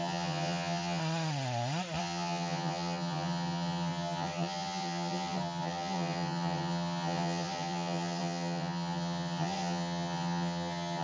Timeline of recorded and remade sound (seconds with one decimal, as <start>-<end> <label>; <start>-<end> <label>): 0.0-1.0 remade; 1.0-2.0 recorded; 2.0-11.0 remade